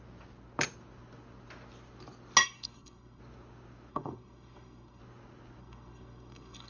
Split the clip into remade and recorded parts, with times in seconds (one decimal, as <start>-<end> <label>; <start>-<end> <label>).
0.0-2.4 recorded; 2.4-3.2 remade; 3.2-3.9 recorded; 3.9-5.0 remade; 5.0-5.6 recorded; 5.6-6.7 remade